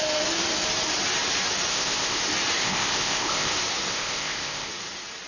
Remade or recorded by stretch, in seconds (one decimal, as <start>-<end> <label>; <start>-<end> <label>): 0.0-1.7 recorded; 1.7-2.2 remade; 2.2-2.6 recorded; 2.6-3.5 remade; 3.5-3.9 recorded; 3.9-4.7 remade; 4.7-5.3 recorded